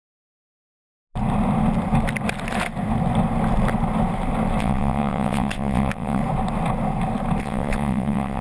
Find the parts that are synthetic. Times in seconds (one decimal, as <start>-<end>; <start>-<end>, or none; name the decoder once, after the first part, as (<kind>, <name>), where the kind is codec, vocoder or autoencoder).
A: 4.6-6.2 (vocoder, WaveNeXt); 7.4-8.4